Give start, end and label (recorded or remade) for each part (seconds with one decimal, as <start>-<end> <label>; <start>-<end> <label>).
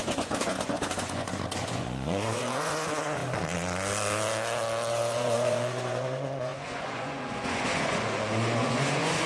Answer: 0.0-3.2 remade; 3.2-4.9 recorded; 4.9-9.3 remade